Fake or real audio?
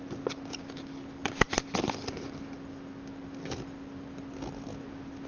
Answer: real